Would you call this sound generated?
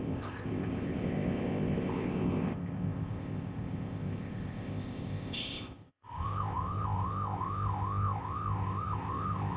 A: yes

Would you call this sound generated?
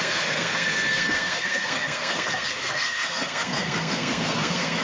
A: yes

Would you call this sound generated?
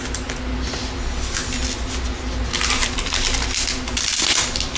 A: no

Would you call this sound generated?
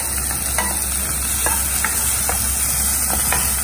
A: no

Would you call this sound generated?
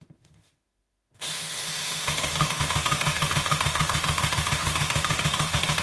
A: yes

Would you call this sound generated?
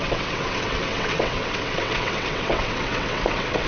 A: yes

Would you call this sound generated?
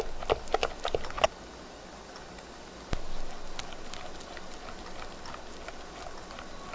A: no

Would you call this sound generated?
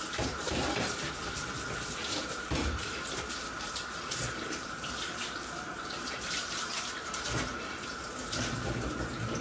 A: yes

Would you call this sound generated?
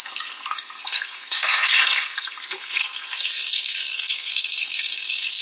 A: yes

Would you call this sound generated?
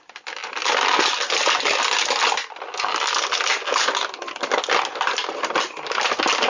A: no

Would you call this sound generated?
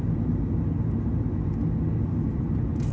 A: no